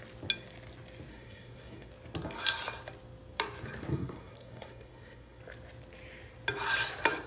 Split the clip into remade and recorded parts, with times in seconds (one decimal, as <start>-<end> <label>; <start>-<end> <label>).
0.0-1.1 recorded; 1.1-1.9 remade; 1.9-3.9 recorded; 3.9-5.4 remade; 5.4-7.3 recorded